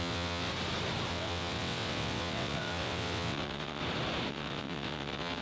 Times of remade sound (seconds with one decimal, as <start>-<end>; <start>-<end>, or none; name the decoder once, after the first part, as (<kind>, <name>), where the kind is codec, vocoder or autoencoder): 0.0-0.5 (vocoder, WaveNeXt); 1.1-3.8; 4.3-5.4